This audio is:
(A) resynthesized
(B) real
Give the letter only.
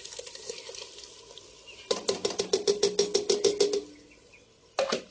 B